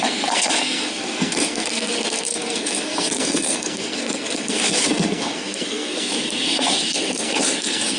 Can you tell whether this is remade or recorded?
remade